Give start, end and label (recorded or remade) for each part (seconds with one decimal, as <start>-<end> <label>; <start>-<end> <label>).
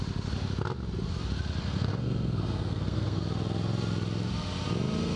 0.0-1.6 recorded; 1.6-3.2 remade; 3.2-5.2 recorded